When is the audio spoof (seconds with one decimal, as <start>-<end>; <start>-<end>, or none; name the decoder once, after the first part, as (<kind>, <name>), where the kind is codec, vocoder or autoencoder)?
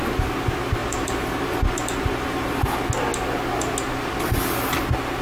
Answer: 0.8-2.8 (vocoder, BigVGAN v2)